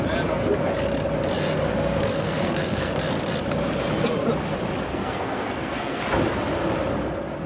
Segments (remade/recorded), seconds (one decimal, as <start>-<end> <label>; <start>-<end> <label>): 0.0-1.7 recorded; 1.7-3.0 remade; 3.0-4.9 recorded; 4.9-6.0 remade; 6.0-7.5 recorded